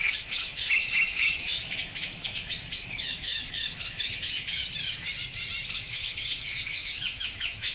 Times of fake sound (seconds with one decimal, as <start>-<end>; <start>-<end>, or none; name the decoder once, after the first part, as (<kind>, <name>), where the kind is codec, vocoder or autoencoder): 0.0-4.6 (autoencoder, DAC-VAE); 5.7-7.7